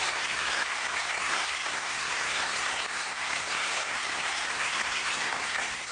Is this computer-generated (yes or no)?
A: yes